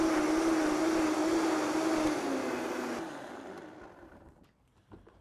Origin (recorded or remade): recorded